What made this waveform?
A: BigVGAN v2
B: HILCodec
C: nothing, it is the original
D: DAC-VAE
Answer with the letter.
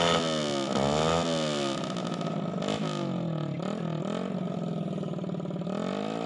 C